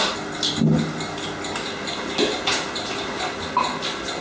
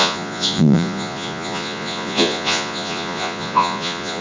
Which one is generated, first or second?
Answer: second